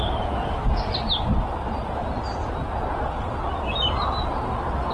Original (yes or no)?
yes